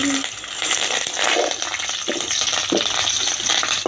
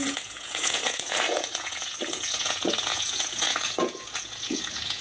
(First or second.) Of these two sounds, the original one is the first